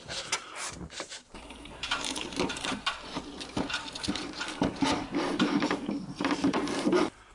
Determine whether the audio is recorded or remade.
remade